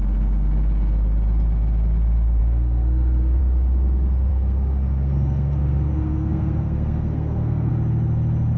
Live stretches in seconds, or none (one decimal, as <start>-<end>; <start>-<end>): 0.0-2.4; 3.4-4.3; 7.7-8.6